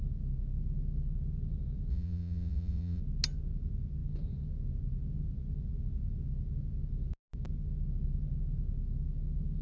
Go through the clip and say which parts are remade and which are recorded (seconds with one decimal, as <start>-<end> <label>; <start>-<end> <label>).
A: 0.0-1.9 recorded; 1.9-3.0 remade; 3.0-9.6 recorded